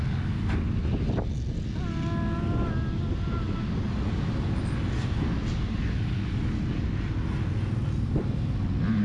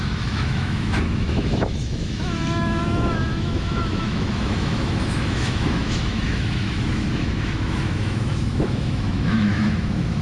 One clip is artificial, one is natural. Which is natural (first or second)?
first